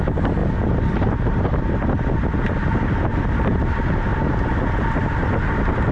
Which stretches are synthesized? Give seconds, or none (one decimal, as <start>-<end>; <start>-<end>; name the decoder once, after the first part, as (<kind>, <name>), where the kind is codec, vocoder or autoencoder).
none